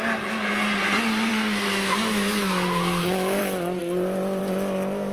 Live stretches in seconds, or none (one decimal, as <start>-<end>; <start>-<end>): 0.0-1.3; 3.4-5.1